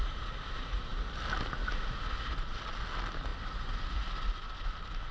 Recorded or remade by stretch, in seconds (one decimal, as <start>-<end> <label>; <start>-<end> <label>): 0.0-5.1 recorded